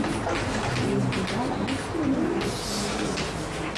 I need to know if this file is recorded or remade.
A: recorded